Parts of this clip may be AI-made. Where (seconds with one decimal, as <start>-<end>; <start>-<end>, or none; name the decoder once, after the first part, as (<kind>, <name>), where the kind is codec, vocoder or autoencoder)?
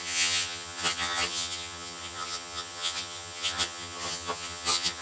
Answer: 0.0-5.0 (vocoder, HiFi-GAN)